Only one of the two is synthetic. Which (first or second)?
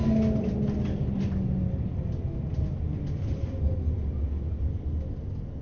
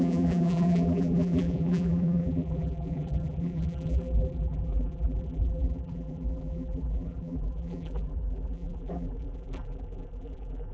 second